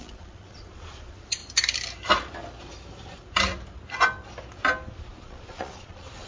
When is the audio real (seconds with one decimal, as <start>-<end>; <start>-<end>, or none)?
1.4-5.2